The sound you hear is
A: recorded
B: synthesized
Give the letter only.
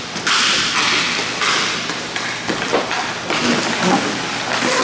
A